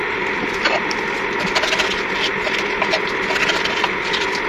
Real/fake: real